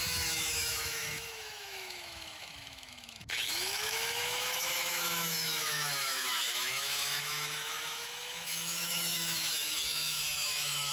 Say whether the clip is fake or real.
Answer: fake